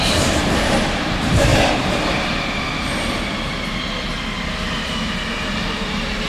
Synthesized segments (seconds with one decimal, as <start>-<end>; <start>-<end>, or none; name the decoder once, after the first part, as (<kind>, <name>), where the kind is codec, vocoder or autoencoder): 0.0-1.5 (vocoder, BigVGAN v2); 5.3-6.3